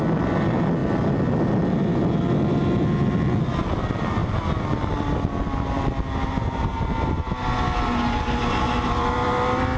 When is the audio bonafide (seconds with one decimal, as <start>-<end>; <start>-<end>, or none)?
0.0-9.8